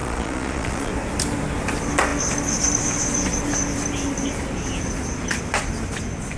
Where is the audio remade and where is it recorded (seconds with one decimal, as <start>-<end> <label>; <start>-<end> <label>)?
0.0-0.9 remade; 0.9-6.4 recorded